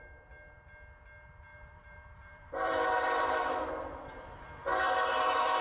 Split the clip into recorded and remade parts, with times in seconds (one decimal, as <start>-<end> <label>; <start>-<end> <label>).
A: 0.0-1.5 recorded; 1.5-3.7 remade; 3.7-4.7 recorded; 4.7-5.6 remade